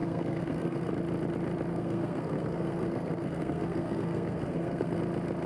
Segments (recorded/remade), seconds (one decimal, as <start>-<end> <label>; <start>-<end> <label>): 0.0-0.9 remade; 0.9-1.7 recorded; 1.7-5.0 remade; 5.0-5.5 recorded